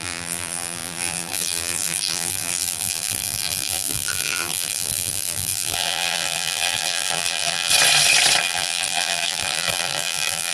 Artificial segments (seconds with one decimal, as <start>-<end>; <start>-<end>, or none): 0.0-7.7; 8.4-10.5